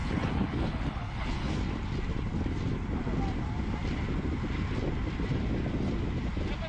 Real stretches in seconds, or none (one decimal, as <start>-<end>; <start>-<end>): 1.6-6.7